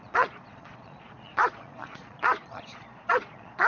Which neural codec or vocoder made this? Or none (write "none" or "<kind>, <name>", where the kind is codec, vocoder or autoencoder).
vocoder, Vocos